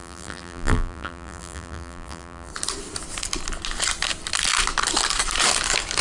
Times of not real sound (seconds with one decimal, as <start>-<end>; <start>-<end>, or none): 0.0-2.5